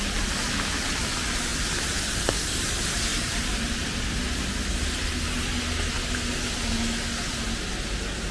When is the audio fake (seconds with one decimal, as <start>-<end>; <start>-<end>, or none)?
none